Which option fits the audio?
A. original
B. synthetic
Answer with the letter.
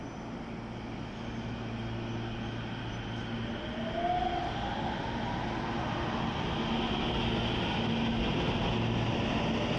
A